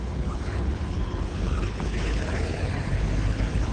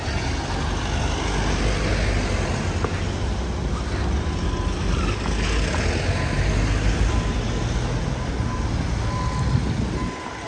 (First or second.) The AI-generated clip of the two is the first